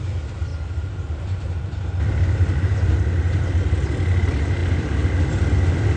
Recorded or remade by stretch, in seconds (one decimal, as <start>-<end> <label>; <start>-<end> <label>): 0.0-6.0 recorded